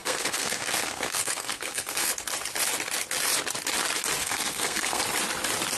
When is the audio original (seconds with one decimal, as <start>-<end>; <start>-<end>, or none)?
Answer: 2.1-4.2; 5.0-5.8